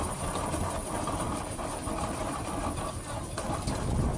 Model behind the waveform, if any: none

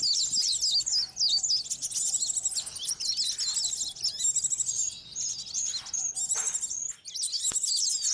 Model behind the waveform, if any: none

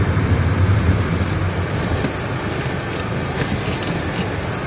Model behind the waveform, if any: none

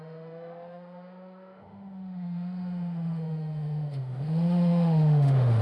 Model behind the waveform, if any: autoencoder, DAC-VAE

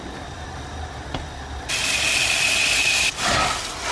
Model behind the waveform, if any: none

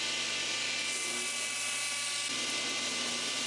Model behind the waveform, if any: none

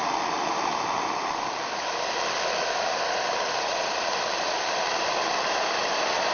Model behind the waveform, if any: none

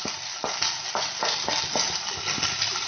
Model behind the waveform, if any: none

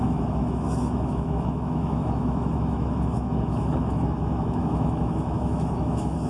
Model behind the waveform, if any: autoencoder, DAC-VAE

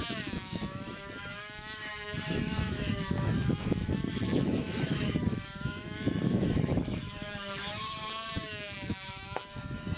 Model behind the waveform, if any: autoencoder, DAC-VAE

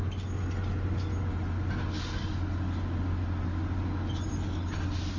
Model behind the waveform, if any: none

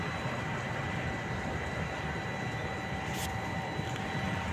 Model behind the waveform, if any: none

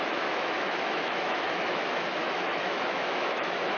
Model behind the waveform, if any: autoencoder, DAC-VAE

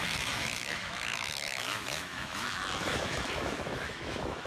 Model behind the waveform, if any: autoencoder, DAC-VAE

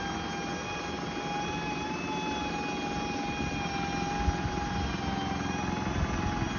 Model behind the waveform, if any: none